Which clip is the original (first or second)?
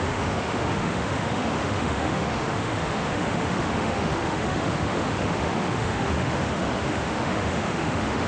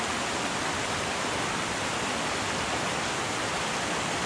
second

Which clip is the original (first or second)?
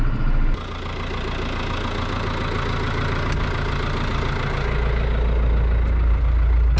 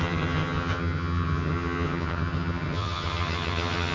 first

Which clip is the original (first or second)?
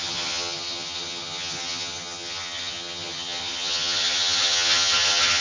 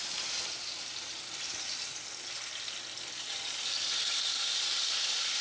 second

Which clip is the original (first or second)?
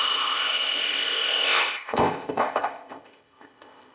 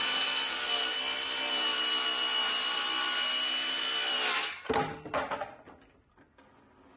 second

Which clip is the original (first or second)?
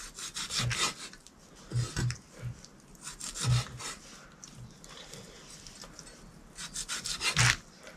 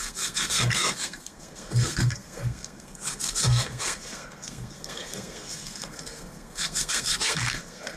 first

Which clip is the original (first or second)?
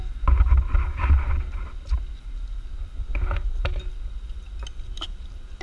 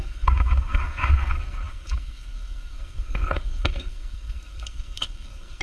first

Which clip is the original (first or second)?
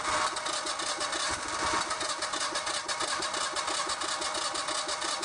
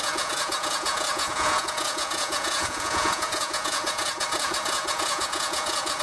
first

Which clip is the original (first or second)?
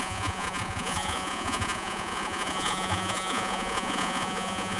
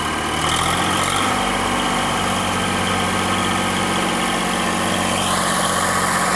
second